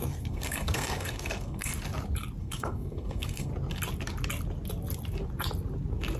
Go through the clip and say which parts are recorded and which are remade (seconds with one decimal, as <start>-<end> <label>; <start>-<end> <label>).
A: 0.0-1.7 remade; 1.7-2.4 recorded; 2.4-3.5 remade; 3.5-6.2 recorded